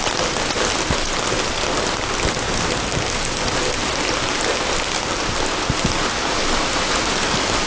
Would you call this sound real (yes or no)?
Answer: yes